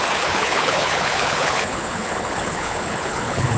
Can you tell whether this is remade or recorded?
remade